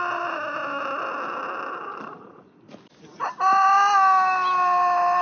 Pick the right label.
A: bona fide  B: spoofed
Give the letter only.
A